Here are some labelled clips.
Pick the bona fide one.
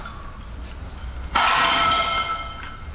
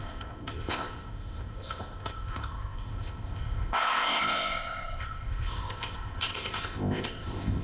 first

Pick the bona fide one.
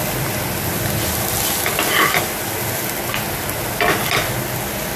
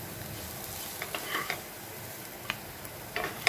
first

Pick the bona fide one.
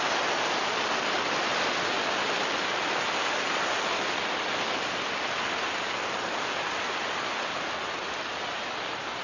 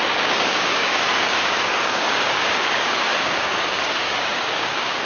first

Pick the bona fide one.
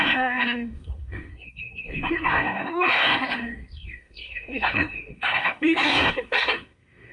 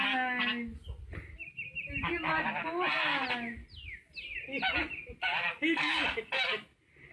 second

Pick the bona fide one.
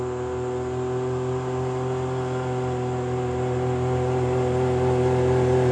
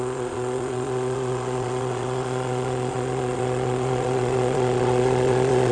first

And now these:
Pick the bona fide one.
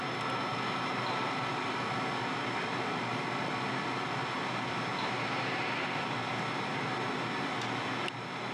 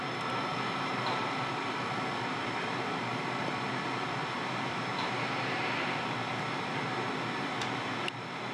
first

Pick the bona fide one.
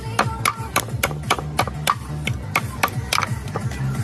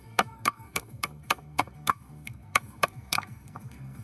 first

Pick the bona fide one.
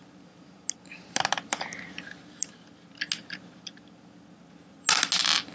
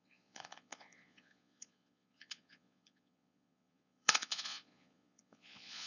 first